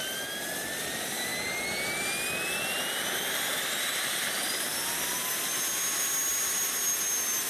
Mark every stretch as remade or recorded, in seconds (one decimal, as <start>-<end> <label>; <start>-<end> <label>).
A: 0.0-1.3 remade; 1.3-3.3 recorded; 3.3-5.2 remade; 5.2-7.5 recorded